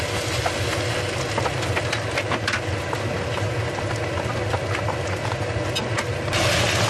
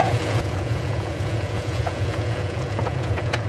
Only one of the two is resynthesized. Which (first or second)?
second